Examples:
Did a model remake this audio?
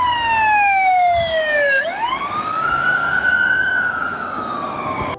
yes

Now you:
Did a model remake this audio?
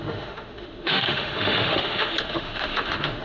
yes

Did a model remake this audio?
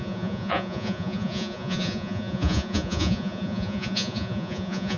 yes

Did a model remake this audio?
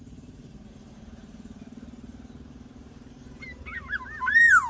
yes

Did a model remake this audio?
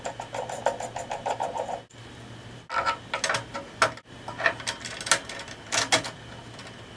no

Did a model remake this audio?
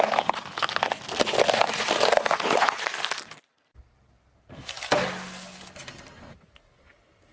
no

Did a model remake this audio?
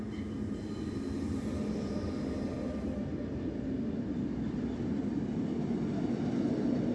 no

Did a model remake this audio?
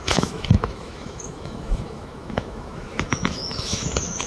yes